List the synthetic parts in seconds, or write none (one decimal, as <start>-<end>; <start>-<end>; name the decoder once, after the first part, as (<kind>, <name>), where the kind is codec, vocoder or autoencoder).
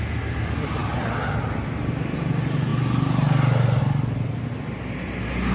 none